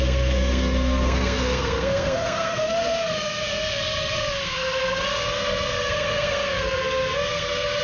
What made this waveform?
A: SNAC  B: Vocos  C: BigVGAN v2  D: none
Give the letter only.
A